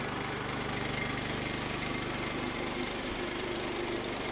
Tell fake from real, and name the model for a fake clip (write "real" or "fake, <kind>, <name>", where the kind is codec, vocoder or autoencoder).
real